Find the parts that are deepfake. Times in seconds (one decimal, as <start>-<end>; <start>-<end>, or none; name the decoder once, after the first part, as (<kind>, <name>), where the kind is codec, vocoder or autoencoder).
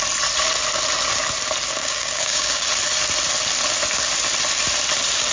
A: 1.8-2.7 (codec, DAC)